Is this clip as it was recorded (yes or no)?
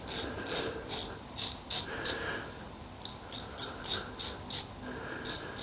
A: yes